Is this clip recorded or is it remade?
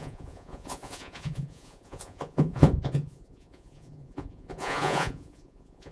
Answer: remade